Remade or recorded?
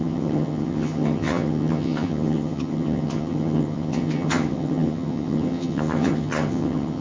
remade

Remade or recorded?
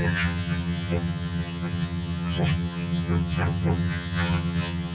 remade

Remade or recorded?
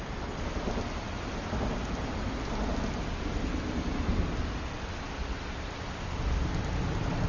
recorded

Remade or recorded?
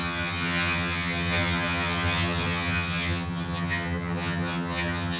remade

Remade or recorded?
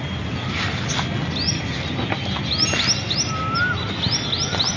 recorded